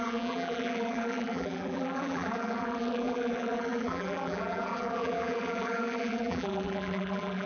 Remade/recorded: remade